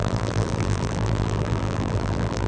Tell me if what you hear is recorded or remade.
remade